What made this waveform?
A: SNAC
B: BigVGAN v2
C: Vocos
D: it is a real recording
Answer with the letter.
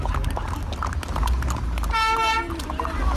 D